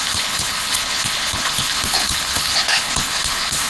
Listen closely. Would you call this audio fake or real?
fake